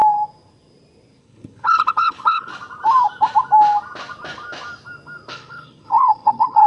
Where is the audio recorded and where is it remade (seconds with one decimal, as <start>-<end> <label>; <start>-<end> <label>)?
0.0-1.2 recorded; 1.2-2.5 remade; 2.5-5.3 recorded; 5.3-6.7 remade